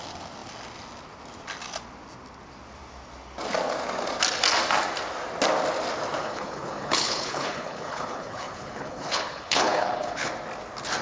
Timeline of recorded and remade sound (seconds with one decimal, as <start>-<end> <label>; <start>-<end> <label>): 0.0-6.2 recorded; 6.2-10.3 remade; 10.3-11.0 recorded